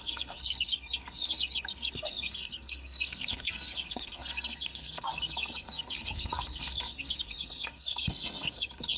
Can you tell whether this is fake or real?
fake